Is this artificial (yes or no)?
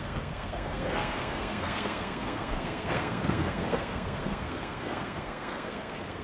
yes